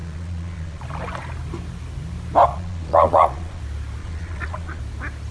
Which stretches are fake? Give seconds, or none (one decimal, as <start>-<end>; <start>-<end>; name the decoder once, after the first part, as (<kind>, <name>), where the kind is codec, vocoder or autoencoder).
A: 0.0-0.8 (vocoder, Vocos); 2.5-3.6; 4.0-4.8